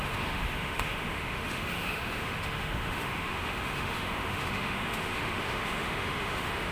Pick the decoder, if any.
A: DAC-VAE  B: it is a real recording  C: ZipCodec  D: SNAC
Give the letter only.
A